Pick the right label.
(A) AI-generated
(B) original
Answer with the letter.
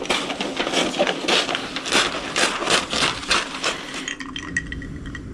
B